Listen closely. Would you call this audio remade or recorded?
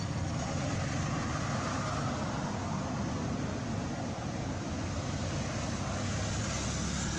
recorded